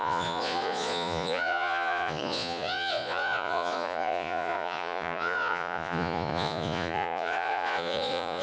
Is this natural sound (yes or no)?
no